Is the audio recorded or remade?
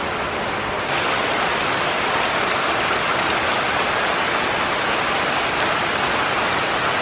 recorded